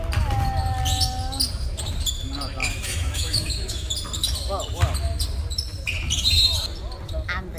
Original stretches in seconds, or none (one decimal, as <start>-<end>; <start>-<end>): 0.0-2.6; 3.9-7.6